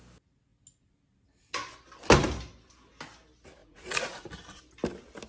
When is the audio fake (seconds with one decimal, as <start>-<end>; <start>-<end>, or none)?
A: 3.6-4.3